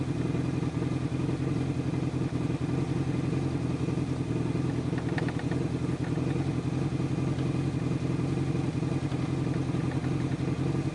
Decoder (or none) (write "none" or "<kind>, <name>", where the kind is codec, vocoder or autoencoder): none